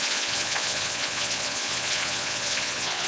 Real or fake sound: fake